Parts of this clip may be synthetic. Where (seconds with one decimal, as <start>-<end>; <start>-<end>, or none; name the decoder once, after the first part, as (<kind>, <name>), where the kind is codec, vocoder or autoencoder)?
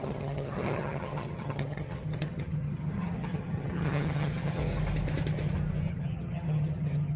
0.0-4.6 (vocoder, HiFi-GAN); 5.9-7.2